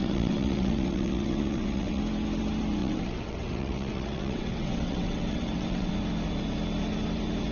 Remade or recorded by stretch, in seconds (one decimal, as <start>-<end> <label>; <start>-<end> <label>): 0.0-2.0 remade; 2.0-2.8 recorded; 2.8-5.9 remade; 5.9-7.5 recorded